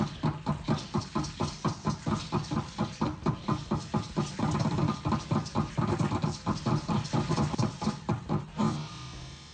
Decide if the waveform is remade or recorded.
recorded